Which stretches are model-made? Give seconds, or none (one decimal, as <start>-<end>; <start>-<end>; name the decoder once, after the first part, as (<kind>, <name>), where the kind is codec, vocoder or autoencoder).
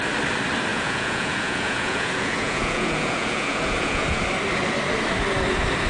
0.7-4.2 (vocoder, Vocos)